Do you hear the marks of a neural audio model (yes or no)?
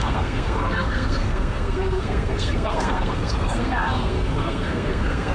yes